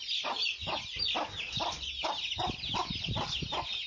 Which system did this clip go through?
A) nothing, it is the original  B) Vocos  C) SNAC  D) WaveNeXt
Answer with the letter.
A